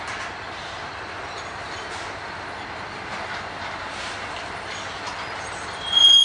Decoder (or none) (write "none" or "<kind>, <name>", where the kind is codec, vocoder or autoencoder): none